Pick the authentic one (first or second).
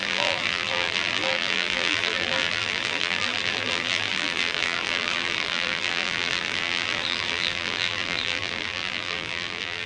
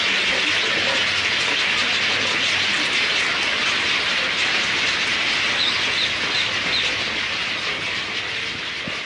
second